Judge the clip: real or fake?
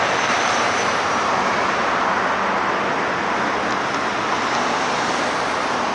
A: real